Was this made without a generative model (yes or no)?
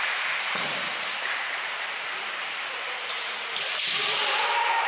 no